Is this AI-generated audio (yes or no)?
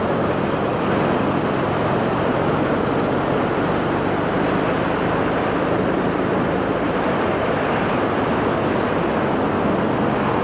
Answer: no